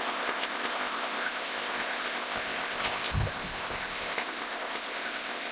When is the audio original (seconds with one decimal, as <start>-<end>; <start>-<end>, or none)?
none